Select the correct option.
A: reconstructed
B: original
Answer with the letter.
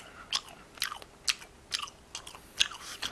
B